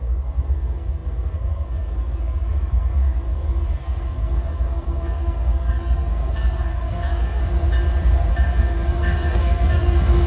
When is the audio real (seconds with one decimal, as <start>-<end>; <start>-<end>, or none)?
7.4-8.3